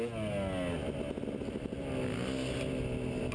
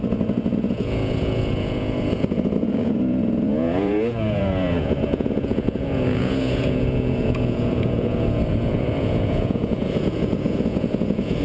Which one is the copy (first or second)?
second